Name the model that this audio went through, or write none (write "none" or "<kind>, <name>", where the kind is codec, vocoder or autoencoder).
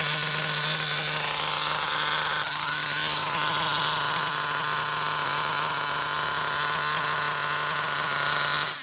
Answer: none